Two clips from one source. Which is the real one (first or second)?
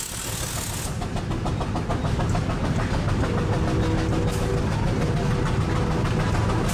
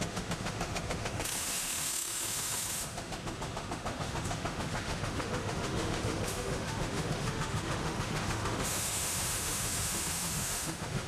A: first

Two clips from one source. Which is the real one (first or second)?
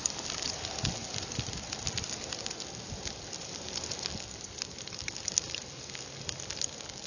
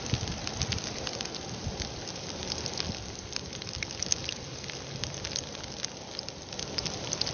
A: first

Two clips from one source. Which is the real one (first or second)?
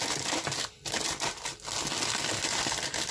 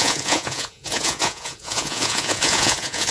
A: first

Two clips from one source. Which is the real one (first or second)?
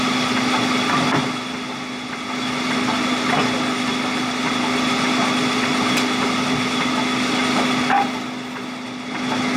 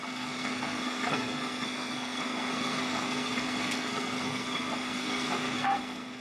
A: first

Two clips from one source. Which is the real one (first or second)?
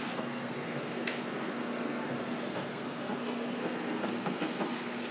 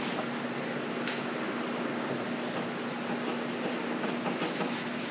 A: second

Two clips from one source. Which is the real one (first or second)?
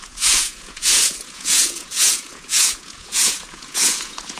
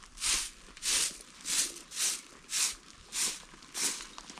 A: second